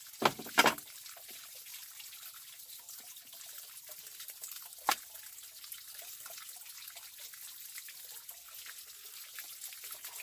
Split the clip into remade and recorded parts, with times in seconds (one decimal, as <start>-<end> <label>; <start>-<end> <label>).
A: 0.0-10.2 recorded